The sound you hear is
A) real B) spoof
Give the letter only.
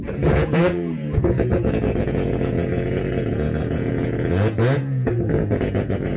B